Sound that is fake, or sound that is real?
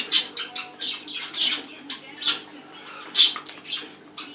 real